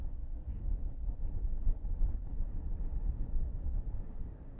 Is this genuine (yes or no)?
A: yes